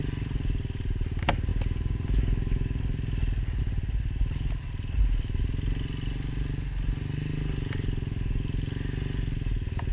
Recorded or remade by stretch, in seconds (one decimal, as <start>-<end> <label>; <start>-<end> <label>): 0.0-9.9 recorded